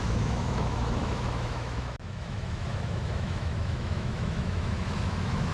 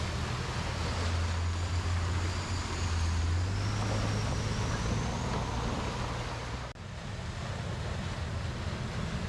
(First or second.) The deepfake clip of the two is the first